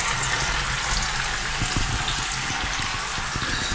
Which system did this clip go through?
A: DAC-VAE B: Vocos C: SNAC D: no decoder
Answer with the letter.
D